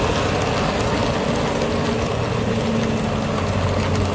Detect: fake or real real